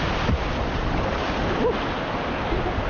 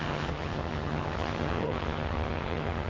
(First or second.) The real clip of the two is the first